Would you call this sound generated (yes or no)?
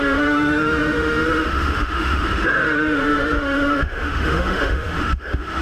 yes